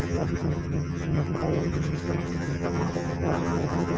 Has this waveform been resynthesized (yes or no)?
yes